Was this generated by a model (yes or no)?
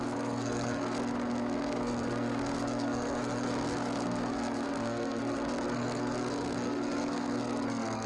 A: yes